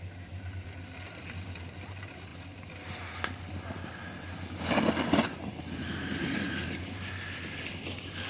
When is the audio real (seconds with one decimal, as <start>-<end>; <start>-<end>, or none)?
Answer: 0.0-8.3